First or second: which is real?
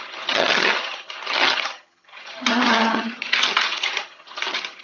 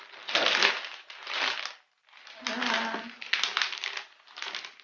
second